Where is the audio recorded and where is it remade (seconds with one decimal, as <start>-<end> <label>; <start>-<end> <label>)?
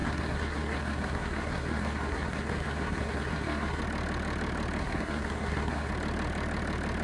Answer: 0.0-3.8 remade; 3.8-4.8 recorded; 4.8-5.9 remade; 5.9-7.0 recorded